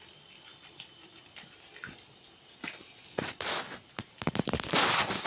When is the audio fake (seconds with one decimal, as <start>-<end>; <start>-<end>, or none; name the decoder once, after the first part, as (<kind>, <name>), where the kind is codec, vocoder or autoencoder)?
none